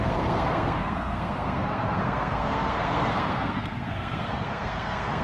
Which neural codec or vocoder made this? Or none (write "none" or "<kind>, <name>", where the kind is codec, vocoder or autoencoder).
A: codec, SNAC